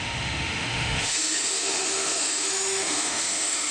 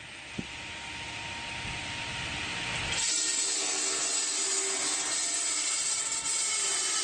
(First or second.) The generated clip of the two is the first